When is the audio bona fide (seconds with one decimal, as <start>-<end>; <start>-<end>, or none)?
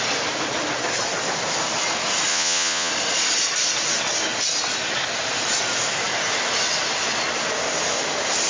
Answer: 0.0-2.3; 2.9-8.5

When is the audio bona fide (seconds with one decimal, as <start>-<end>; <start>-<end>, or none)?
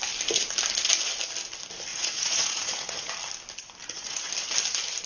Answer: 0.0-1.9; 3.1-3.8; 4.3-5.1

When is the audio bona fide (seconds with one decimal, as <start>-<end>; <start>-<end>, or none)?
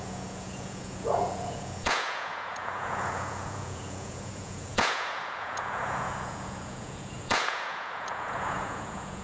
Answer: none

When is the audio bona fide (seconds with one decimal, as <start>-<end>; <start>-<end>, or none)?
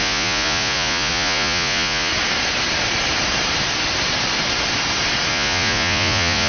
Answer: 2.1-5.3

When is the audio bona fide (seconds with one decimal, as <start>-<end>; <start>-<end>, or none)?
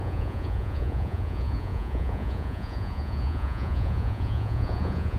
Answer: none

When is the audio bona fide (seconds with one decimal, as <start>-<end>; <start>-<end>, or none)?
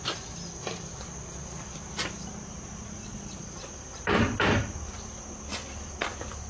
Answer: 0.0-3.0; 3.7-6.5